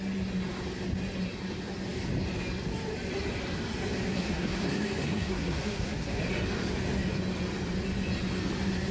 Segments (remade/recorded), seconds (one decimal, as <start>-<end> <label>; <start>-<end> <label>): 0.0-4.1 recorded; 4.1-6.2 remade; 6.2-8.9 recorded

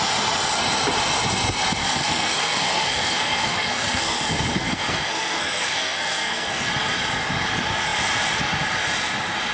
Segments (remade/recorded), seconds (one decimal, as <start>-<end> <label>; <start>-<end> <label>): 0.0-1.8 recorded; 1.8-6.7 remade; 6.7-9.5 recorded

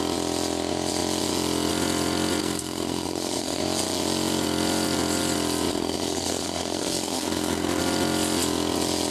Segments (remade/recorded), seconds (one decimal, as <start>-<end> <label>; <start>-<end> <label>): 0.0-2.4 recorded; 2.4-3.6 remade; 3.6-5.7 recorded; 5.7-7.8 remade; 7.8-9.1 recorded

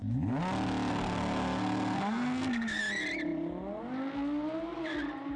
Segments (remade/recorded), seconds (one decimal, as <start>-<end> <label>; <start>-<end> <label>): 0.0-0.9 recorded; 0.9-2.8 remade; 2.8-5.4 recorded